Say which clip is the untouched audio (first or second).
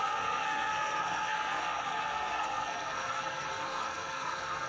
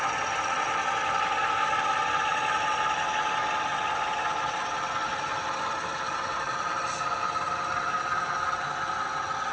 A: second